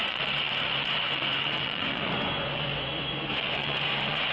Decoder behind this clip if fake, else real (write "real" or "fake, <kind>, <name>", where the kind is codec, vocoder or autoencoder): fake, vocoder, Vocos